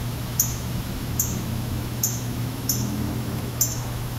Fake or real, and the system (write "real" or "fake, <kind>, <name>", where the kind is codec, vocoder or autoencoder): fake, autoencoder, DAC-VAE